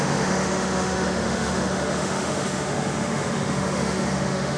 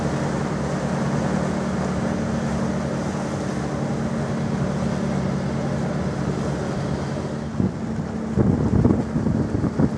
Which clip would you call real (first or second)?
second